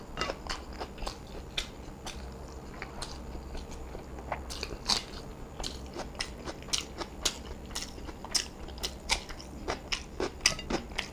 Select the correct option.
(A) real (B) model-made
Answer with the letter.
A